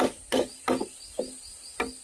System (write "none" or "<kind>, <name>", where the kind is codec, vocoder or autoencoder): none